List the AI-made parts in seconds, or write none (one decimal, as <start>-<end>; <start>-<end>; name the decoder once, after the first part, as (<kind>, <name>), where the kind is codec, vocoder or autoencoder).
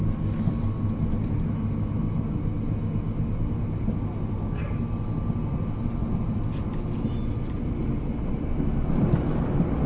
none